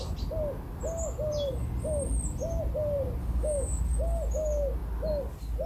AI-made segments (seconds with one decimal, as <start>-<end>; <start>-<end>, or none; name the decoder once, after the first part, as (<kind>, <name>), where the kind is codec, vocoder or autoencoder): 3.2-3.8 (codec, DAC)